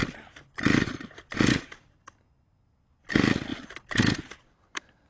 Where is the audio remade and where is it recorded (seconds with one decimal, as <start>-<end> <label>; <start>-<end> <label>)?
0.0-5.1 recorded